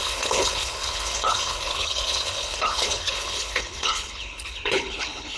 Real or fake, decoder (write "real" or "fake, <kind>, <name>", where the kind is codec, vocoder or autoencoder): fake, codec, HILCodec